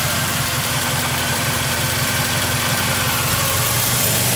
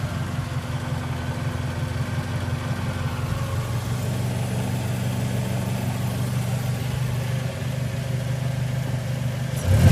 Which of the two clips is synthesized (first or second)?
first